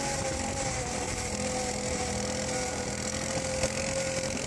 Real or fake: real